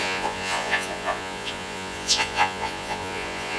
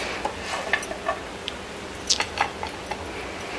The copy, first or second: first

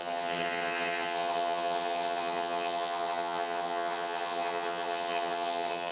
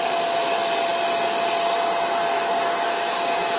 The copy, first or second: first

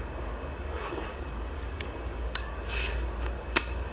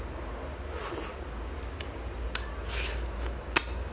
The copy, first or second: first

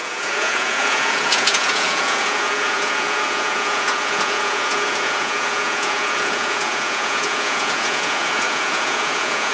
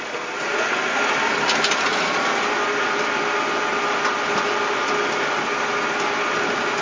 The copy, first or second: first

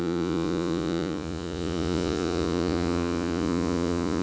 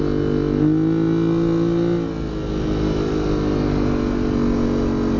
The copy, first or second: first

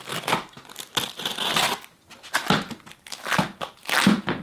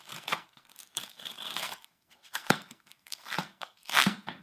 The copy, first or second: second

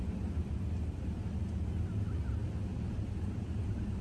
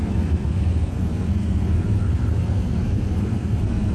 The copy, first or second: second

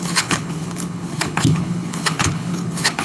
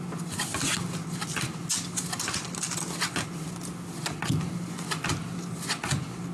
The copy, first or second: first